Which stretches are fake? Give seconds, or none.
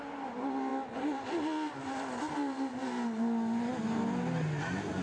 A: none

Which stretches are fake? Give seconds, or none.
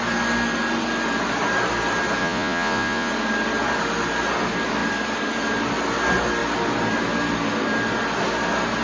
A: 2.2-3.1 (vocoder, Vocos)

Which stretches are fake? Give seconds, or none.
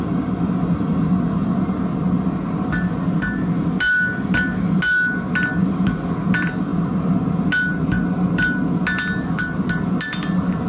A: none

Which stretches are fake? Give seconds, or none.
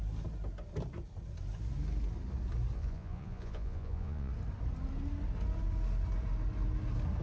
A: 2.8-4.3 (vocoder, Vocos)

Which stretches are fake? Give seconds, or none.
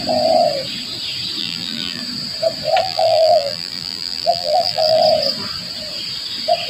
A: 1.4-2.0 (vocoder, BigVGAN v2); 2.8-5.0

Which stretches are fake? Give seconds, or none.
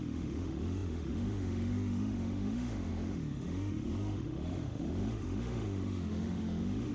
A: 0.0-6.9 (autoencoder, DAC-VAE)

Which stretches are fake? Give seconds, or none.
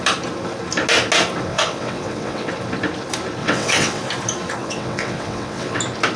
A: 1.5-2.5 (vocoder, WaveNeXt); 3.4-4.0; 4.6-5.8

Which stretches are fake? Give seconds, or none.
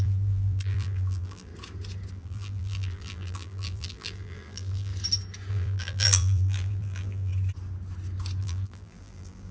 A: 0.0-1.5 (vocoder, BigVGAN v2); 2.1-4.9; 5.5-7.3; 8.4-9.5